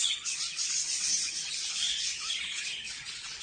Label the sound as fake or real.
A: fake